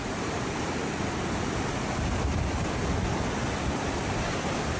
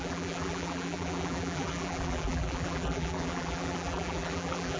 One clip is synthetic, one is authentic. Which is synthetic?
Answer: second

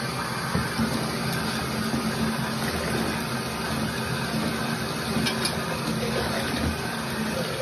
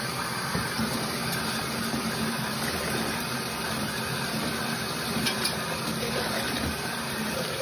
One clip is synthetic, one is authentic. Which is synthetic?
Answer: second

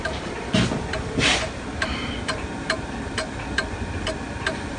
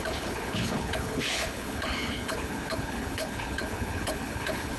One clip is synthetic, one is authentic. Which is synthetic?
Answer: second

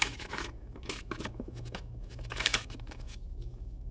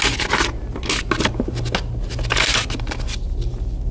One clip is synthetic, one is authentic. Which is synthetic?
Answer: first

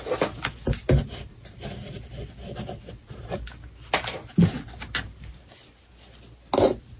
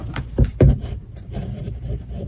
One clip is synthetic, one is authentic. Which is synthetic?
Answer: second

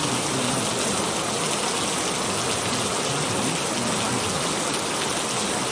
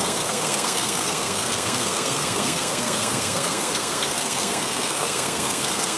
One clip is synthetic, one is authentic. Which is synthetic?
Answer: second